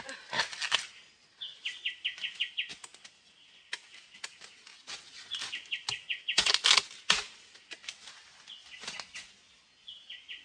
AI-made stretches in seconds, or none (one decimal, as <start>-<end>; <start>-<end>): none